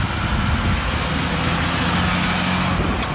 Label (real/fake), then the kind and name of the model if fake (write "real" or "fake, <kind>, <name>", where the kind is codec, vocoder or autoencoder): real